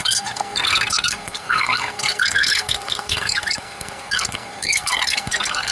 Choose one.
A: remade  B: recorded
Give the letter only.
A